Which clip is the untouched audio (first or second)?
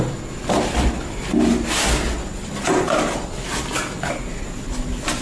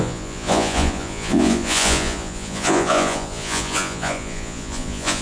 first